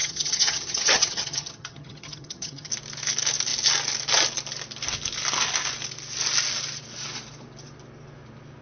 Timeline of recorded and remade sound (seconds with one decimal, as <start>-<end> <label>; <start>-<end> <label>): 0.0-2.7 remade; 2.7-8.6 recorded